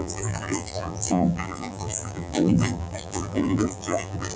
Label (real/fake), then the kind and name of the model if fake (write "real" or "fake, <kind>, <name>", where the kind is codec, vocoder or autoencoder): fake, vocoder, BigVGAN v2